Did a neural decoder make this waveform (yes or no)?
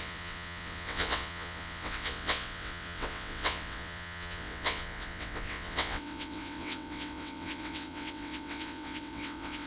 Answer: yes